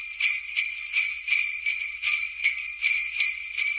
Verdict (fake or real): fake